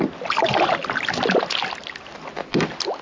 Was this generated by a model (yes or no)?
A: no